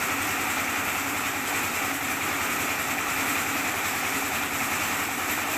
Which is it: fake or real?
real